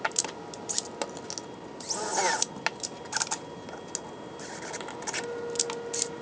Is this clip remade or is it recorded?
recorded